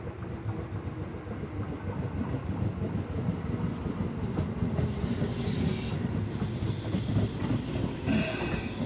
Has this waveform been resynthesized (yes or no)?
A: no